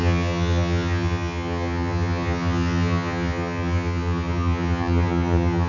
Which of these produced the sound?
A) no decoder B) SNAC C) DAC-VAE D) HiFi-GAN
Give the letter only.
D